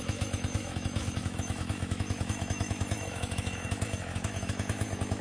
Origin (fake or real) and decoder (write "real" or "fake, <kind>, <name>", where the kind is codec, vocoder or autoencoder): fake, autoencoder, DAC-VAE